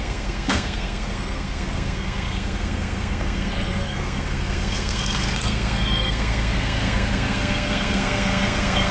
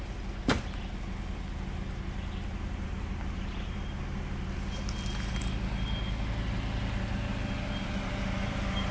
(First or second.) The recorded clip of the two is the second